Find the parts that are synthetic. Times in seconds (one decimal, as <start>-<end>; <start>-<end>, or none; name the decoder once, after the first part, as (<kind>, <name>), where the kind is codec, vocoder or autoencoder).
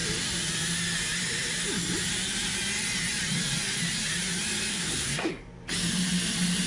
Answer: 4.7-5.3 (codec, SNAC)